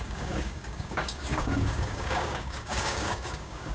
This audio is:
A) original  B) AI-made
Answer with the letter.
B